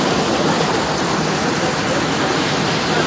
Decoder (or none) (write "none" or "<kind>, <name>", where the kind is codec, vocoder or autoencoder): none